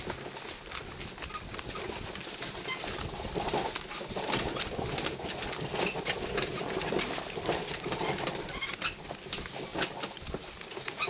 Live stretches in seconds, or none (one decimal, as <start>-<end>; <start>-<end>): 0.0-11.1